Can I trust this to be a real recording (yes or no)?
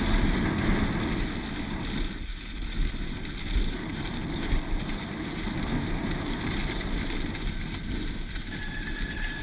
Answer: yes